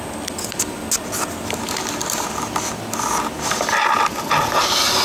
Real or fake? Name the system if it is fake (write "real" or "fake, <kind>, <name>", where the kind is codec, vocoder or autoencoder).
real